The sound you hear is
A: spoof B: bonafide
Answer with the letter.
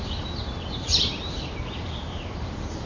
A